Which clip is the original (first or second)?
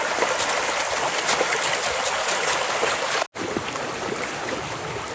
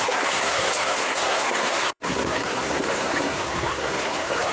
first